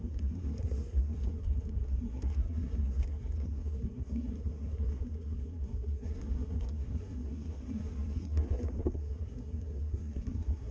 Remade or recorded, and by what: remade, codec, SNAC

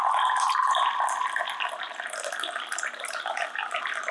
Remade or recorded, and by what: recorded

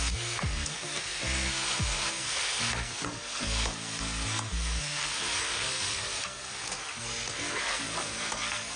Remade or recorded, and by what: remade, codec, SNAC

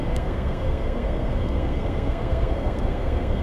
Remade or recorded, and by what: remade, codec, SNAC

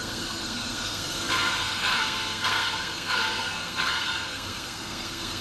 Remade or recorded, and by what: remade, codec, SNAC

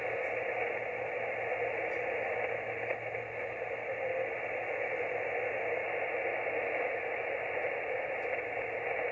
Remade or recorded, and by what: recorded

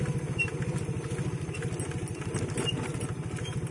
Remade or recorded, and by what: recorded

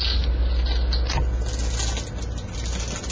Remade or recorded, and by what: recorded